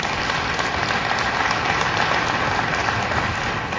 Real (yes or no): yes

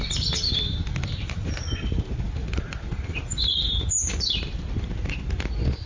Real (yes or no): yes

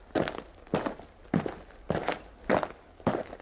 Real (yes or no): yes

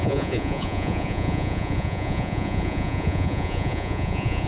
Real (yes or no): no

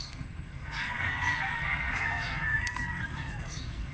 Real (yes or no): no